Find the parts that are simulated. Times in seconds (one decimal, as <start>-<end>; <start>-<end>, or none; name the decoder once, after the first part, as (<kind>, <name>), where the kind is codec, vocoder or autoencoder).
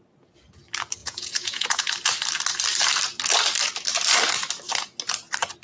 1.0-1.9 (vocoder, Vocos)